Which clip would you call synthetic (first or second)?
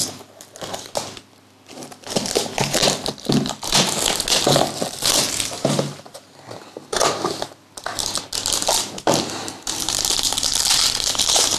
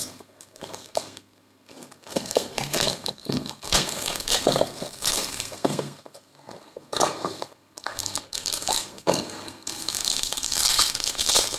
second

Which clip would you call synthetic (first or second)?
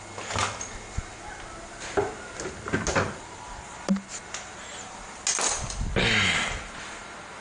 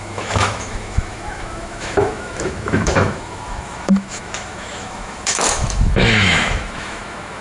second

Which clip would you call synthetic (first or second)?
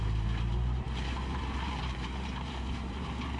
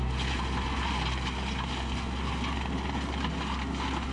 first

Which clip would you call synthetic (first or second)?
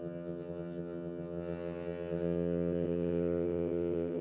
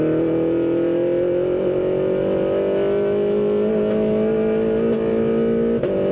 first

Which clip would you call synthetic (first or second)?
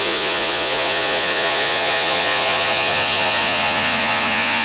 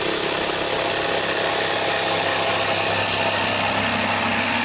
first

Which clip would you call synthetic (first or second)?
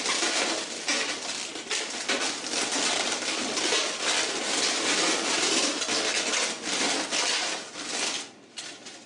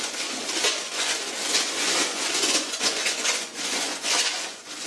second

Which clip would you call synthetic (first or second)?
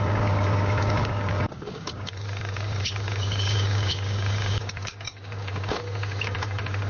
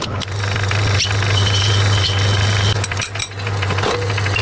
first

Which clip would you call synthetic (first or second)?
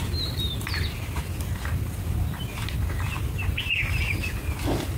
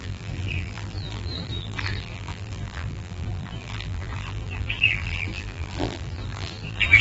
second